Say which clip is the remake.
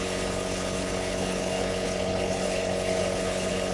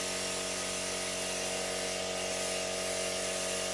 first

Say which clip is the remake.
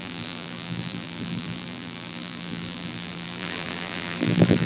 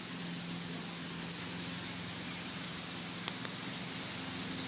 first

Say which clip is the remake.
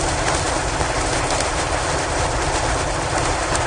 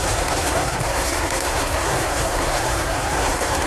second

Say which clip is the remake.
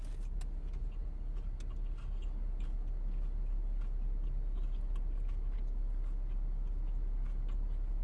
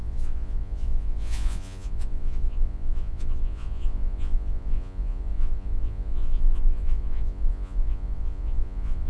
second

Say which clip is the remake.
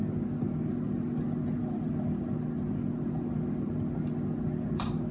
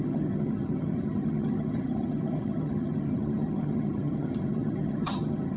second